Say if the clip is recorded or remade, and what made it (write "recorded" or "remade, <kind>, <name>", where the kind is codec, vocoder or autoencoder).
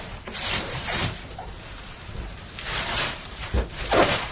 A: remade, vocoder, BigVGAN v2